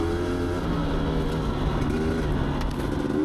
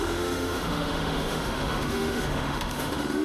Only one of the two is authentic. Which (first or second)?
first